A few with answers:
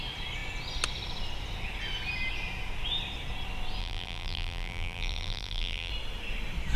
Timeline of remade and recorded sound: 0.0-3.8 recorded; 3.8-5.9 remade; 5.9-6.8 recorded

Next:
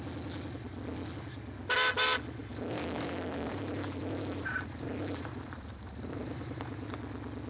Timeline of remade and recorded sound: 0.0-2.4 recorded; 2.4-6.9 remade; 6.9-7.5 recorded

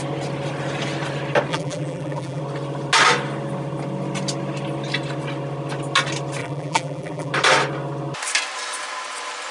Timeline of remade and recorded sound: 0.0-1.5 recorded; 1.5-2.4 remade; 2.4-6.4 recorded; 6.4-7.3 remade; 7.3-9.5 recorded

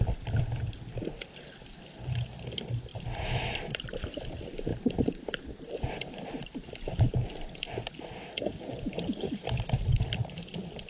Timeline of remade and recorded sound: 0.0-2.9 recorded; 2.9-4.2 remade; 4.2-4.7 recorded; 4.7-6.7 remade; 6.7-8.5 recorded; 8.5-10.0 remade; 10.0-10.9 recorded

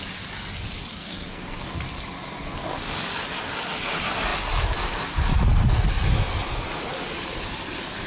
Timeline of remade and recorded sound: 0.0-0.9 recorded; 0.9-1.8 remade; 1.8-8.1 recorded

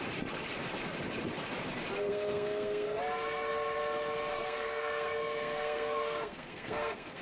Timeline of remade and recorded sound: 0.0-2.1 recorded; 2.1-3.0 remade; 3.0-4.3 recorded; 4.3-7.2 remade

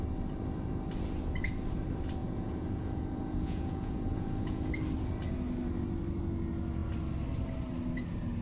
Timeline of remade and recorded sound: 0.0-2.2 recorded; 2.2-4.7 remade; 4.7-8.4 recorded